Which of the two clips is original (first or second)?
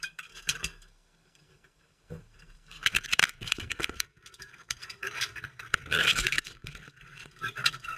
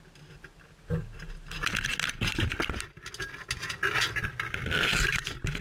second